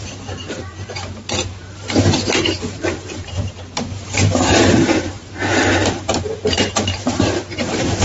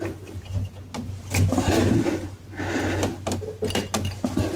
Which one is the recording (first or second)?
second